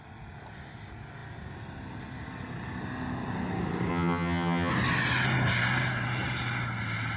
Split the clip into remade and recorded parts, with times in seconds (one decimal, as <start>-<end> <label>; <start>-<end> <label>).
0.0-3.9 recorded; 3.9-4.7 remade; 4.7-7.2 recorded